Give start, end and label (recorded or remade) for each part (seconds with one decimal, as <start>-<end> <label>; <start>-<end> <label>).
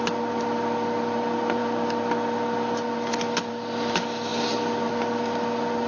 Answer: 0.0-5.9 recorded